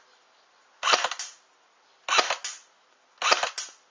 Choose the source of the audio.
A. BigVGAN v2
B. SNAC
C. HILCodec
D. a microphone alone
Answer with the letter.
D